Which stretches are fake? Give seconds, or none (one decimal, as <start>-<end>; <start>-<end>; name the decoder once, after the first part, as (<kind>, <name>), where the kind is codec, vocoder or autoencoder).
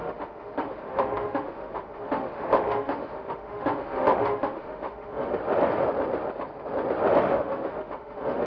0.0-5.4 (autoencoder, DAC-VAE); 7.2-8.5